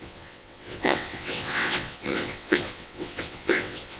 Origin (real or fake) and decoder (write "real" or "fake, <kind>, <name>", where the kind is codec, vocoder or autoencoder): fake, vocoder, WaveNeXt